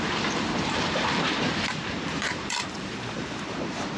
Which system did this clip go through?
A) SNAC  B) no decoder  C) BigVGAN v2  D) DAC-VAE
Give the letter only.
C